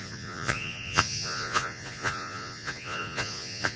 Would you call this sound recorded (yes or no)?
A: no